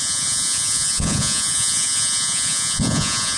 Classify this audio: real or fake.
fake